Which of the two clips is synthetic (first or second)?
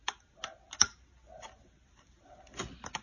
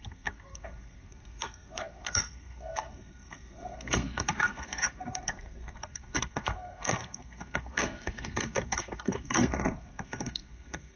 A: second